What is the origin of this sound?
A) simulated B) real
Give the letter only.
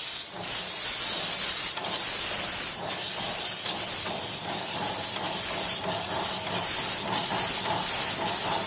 B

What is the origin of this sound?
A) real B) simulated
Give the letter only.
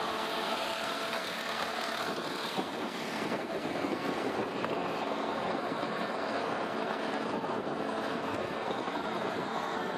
B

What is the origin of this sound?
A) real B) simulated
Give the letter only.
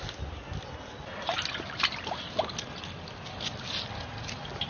A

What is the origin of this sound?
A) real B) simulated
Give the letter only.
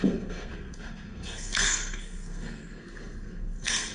B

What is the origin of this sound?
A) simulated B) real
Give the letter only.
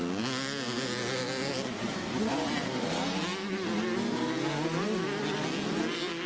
B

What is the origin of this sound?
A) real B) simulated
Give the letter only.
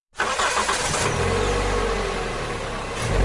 A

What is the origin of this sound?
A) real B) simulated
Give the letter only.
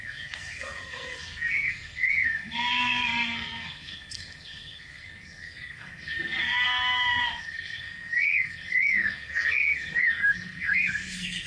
B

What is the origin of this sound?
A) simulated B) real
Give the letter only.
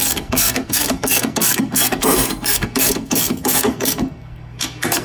A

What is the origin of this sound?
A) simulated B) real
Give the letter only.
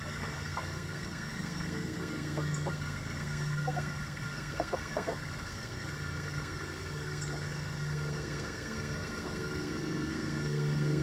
A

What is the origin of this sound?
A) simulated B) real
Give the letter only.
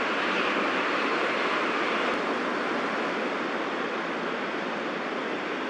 B